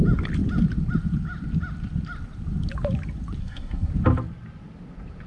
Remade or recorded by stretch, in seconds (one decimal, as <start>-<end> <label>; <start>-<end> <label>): 0.0-3.4 recorded; 3.4-3.9 remade; 3.9-5.3 recorded